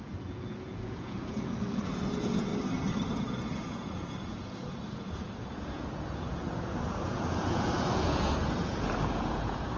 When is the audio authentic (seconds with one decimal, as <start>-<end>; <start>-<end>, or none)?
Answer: 2.5-3.1